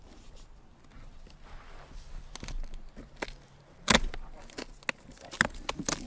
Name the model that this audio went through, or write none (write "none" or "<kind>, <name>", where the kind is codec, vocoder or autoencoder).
none